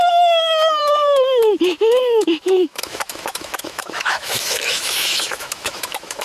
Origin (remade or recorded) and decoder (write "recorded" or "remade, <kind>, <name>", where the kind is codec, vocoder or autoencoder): remade, autoencoder, DAC-VAE